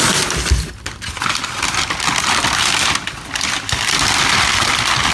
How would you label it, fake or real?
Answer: real